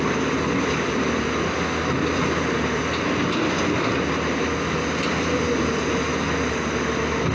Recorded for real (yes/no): yes